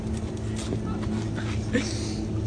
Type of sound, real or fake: real